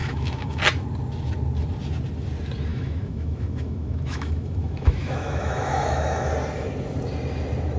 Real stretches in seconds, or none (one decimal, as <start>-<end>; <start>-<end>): 0.6-2.7; 6.3-7.8